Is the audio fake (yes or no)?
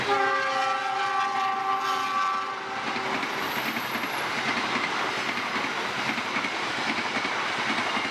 no